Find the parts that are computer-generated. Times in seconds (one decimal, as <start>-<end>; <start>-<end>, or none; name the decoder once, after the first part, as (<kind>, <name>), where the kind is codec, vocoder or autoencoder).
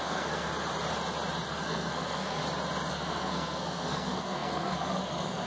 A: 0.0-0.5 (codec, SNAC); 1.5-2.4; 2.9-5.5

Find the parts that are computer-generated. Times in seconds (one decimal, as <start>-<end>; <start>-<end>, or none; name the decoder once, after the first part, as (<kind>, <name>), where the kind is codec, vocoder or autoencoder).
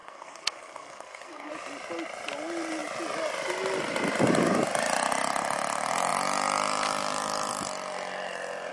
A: 0.0-1.5 (codec, SNAC)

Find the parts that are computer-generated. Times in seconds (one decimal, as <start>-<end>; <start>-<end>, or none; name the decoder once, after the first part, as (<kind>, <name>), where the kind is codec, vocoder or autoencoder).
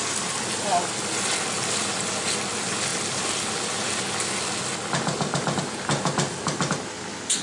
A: none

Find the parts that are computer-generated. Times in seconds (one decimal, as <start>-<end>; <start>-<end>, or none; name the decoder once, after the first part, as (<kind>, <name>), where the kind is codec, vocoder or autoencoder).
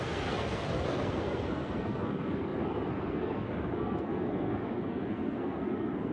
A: 0.0-6.1 (codec, SNAC)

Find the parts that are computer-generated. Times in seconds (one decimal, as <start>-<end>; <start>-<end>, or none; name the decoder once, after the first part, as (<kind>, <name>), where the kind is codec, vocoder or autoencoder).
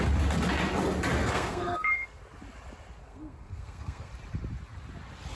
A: 1.2-2.2 (codec, SNAC); 3.0-4.1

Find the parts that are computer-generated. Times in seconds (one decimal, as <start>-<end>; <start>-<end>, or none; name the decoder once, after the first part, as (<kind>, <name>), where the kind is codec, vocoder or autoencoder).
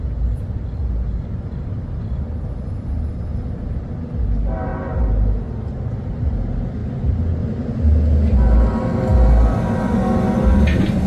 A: none